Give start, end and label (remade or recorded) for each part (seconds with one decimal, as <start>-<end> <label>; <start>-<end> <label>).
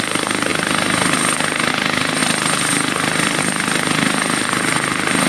0.0-5.3 recorded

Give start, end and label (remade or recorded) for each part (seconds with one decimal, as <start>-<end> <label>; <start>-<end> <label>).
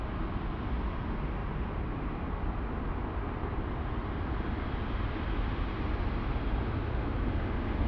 0.0-7.9 recorded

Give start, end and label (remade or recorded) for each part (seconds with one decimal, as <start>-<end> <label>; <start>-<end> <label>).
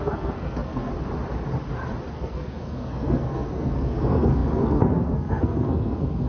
0.0-0.9 remade; 0.9-2.1 recorded; 2.1-6.3 remade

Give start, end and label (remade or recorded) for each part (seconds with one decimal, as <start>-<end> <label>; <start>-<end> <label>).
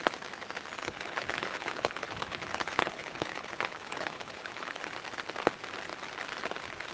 0.0-0.8 recorded; 0.8-4.9 remade; 4.9-6.9 recorded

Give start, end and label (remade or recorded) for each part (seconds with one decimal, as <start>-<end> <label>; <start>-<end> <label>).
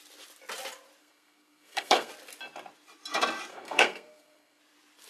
0.0-1.0 recorded; 1.0-2.1 remade; 2.1-3.5 recorded; 3.5-4.6 remade; 4.6-5.1 recorded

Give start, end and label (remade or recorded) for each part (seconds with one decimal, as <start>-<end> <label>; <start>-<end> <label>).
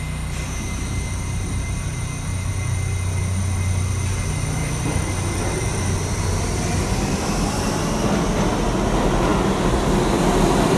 0.0-10.8 recorded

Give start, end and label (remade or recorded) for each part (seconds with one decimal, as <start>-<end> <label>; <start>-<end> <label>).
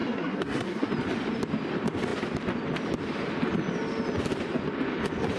0.0-0.9 remade; 0.9-5.4 recorded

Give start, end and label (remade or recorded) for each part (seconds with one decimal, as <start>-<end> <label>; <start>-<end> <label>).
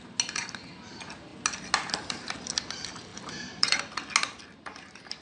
0.0-3.1 recorded; 3.1-3.7 remade; 3.7-5.2 recorded